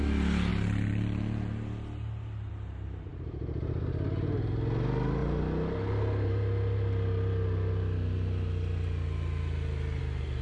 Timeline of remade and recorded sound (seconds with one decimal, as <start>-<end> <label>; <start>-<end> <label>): 0.0-10.4 recorded